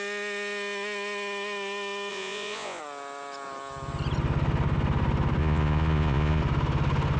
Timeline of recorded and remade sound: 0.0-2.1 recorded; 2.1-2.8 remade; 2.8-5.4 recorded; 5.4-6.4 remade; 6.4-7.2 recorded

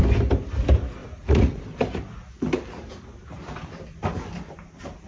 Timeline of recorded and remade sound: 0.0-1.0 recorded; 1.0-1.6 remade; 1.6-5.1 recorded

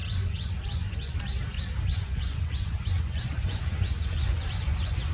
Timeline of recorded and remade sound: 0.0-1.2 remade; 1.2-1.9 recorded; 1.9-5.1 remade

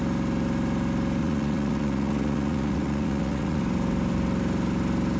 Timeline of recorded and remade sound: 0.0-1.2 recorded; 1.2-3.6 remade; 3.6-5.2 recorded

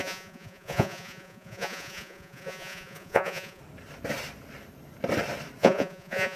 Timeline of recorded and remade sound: 0.0-3.6 remade; 3.6-5.6 recorded; 5.6-6.4 remade